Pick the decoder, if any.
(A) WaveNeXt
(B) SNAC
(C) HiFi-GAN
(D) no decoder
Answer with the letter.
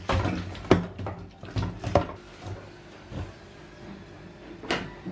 D